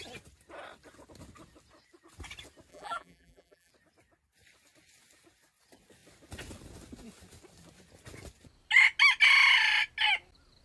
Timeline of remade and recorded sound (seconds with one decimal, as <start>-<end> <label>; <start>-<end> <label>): 0.0-2.7 recorded; 2.7-3.7 remade; 3.7-10.6 recorded